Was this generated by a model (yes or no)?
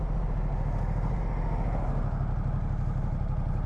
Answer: no